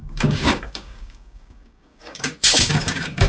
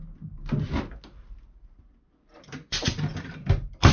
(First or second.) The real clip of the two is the second